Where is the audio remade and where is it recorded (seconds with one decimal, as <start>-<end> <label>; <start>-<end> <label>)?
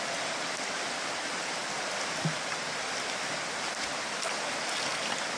0.0-5.4 recorded